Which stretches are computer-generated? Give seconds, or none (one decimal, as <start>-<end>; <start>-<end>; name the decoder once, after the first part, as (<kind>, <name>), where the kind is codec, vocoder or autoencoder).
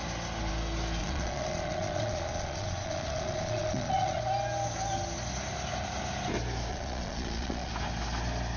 1.0-4.2 (vocoder, Vocos); 6.7-7.7